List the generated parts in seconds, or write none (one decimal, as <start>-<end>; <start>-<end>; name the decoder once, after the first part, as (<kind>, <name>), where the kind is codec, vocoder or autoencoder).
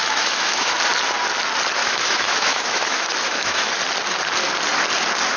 0.0-0.7 (autoencoder, DAC-VAE); 1.8-3.7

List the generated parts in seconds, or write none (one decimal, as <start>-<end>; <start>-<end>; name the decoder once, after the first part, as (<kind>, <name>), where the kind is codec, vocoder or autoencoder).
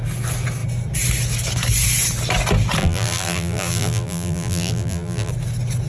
2.8-5.3 (vocoder, BigVGAN v2)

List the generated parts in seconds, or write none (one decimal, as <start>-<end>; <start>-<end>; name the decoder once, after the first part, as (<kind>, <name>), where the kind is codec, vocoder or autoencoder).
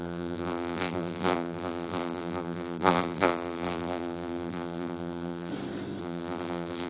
0.0-5.5 (vocoder, BigVGAN v2); 6.0-6.9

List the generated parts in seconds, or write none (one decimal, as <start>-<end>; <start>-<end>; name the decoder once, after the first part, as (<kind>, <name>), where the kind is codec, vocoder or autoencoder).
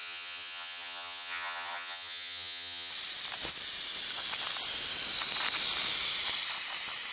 0.0-2.9 (vocoder, HiFi-GAN)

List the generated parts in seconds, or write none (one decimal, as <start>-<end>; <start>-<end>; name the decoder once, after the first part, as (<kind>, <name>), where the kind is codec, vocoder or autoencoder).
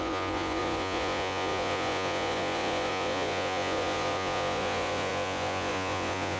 0.0-6.4 (vocoder, Vocos)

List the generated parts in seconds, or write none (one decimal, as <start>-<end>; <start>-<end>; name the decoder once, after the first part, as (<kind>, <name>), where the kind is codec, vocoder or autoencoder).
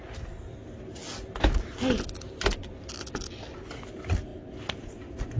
none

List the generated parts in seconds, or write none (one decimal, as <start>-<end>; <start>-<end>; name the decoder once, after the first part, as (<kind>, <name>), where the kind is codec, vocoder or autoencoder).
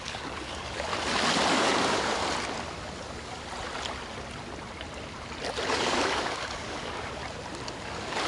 0.0-0.9 (codec, DAC); 1.5-2.2; 5.7-7.2; 7.7-8.3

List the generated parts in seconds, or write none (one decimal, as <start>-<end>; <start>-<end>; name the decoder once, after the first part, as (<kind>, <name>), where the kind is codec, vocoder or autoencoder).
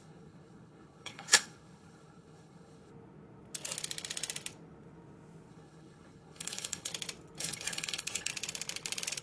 0.0-2.9 (codec, HILCodec); 5.5-6.9; 7.4-8.3